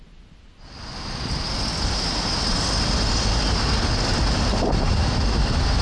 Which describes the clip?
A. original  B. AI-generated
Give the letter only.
A